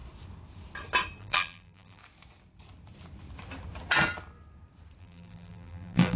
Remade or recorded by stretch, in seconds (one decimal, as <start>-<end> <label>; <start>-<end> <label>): 0.0-1.2 recorded; 1.2-2.0 remade; 2.0-5.0 recorded; 5.0-6.2 remade